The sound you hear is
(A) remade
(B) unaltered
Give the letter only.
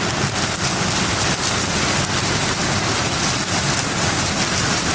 B